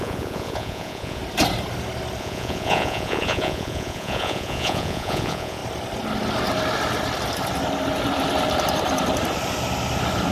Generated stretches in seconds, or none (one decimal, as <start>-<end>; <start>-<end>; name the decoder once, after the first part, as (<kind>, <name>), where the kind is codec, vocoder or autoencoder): 0.0-1.2 (vocoder, Vocos); 2.2-5.6

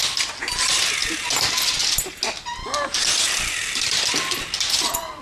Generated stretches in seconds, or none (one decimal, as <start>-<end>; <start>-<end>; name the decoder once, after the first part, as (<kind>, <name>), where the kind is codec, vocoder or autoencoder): none

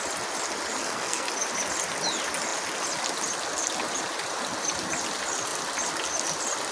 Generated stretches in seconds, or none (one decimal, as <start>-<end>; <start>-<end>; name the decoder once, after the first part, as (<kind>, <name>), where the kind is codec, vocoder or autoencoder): 0.8-1.3 (codec, SNAC)

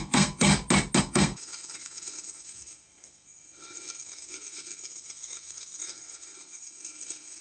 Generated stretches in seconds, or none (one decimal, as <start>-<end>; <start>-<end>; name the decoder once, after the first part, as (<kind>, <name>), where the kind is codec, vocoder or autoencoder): 0.0-0.5 (codec, SNAC); 1.0-7.4

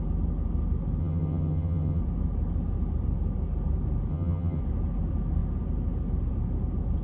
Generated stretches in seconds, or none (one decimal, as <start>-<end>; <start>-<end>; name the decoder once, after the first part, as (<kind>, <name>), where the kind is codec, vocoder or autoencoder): 1.0-2.0 (vocoder, HiFi-GAN); 4.1-4.6